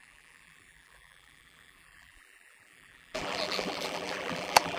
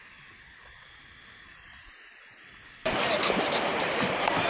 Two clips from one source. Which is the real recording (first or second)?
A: second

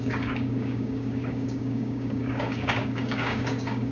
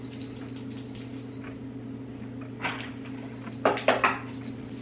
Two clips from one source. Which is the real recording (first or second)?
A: second